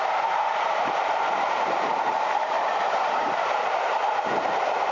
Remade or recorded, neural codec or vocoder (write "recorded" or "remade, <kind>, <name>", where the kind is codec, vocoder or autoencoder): remade, vocoder, BigVGAN v2